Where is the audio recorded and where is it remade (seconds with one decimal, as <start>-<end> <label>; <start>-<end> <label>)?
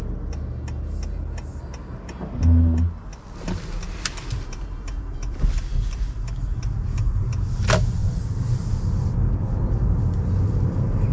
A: 0.0-11.1 recorded